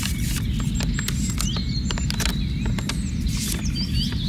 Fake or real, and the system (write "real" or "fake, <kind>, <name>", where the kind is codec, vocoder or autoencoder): real